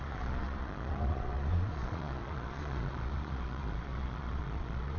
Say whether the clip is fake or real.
fake